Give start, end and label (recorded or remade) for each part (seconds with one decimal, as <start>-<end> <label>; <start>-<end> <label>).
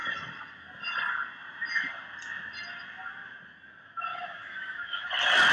0.0-4.1 recorded; 4.1-5.1 remade; 5.1-5.5 recorded